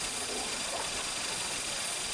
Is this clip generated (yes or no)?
yes